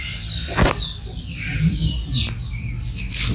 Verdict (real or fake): real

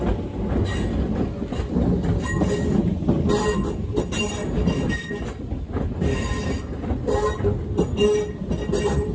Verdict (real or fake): real